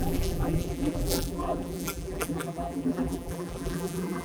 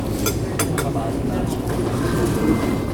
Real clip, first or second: second